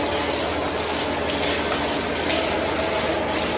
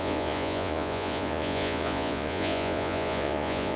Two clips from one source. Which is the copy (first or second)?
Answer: second